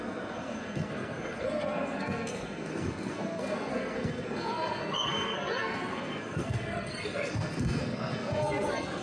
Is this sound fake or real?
fake